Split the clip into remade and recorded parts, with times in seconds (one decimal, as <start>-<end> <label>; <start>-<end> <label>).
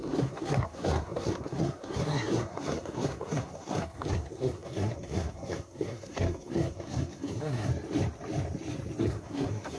0.0-7.7 remade; 7.7-9.0 recorded; 9.0-9.8 remade